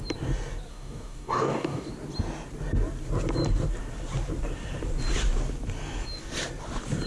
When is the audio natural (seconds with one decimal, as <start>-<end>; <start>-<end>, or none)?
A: 0.0-0.7; 1.9-7.1